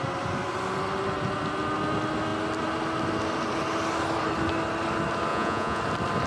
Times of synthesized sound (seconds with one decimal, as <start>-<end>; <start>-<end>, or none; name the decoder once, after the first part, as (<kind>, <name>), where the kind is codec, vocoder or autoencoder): 5.3-5.8 (vocoder, Vocos)

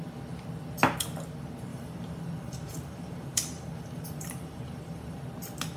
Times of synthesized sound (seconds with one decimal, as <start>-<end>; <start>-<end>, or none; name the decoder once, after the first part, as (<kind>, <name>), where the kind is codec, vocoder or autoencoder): 1.7-5.2 (vocoder, BigVGAN v2)

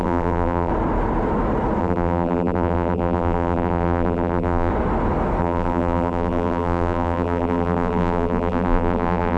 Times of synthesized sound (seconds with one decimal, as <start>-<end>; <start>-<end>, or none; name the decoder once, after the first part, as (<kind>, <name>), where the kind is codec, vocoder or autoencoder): 0.0-0.7 (vocoder, BigVGAN v2); 1.8-4.7; 5.4-9.4

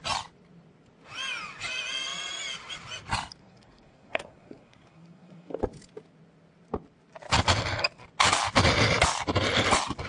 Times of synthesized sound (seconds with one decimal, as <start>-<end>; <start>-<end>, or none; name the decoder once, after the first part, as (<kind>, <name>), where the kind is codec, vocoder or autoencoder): 3.4-5.6 (codec, SNAC)